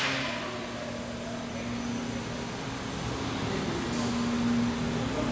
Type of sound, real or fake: real